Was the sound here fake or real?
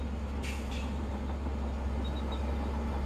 real